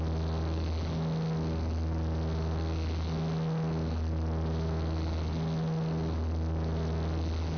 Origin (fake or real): real